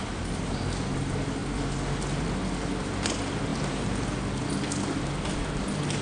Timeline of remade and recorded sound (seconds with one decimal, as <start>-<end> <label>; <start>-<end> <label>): 0.0-6.0 recorded